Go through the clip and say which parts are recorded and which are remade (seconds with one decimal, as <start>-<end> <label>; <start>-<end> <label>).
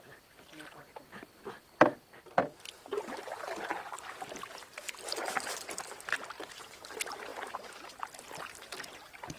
0.0-9.4 recorded